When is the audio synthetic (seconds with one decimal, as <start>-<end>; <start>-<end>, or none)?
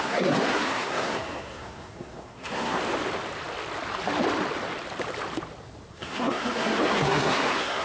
0.0-2.8; 5.9-7.8